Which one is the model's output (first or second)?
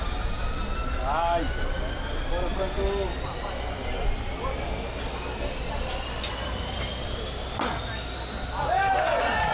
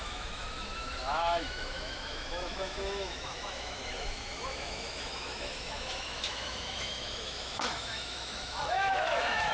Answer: second